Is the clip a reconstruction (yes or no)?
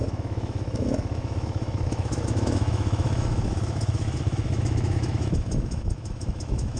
yes